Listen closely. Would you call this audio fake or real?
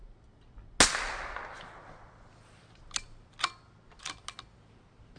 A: real